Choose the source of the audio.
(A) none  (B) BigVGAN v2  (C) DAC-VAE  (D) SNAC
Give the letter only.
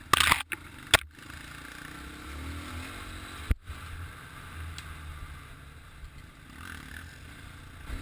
A